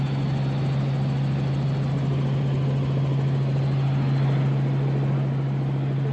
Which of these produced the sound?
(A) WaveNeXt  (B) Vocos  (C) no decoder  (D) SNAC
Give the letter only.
C